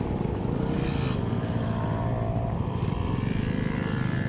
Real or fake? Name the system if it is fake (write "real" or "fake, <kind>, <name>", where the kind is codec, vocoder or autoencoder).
real